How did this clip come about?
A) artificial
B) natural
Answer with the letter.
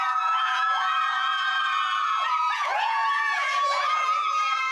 A